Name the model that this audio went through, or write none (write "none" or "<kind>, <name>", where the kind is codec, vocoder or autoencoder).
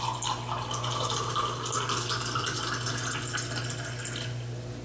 none